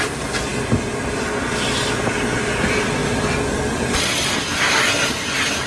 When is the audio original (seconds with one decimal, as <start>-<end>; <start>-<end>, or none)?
0.0-5.7